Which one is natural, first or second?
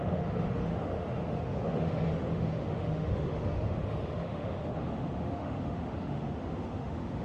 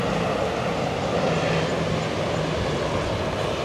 second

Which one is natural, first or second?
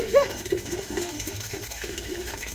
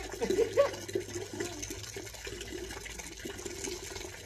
second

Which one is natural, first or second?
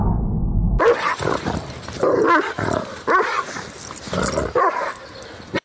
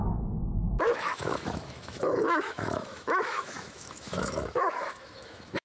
first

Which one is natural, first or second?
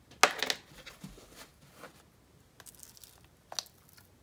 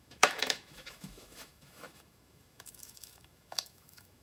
first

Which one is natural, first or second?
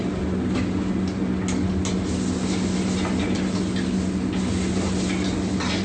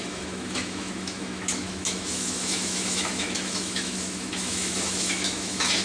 first